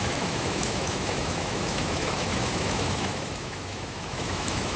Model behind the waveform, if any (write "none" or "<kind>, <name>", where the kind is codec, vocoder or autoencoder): autoencoder, DAC-VAE